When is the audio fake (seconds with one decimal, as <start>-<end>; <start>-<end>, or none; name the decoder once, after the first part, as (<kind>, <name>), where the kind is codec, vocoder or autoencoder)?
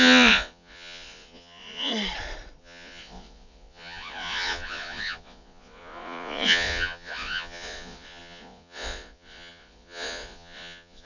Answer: 0.0-1.9 (vocoder, Vocos); 2.6-11.1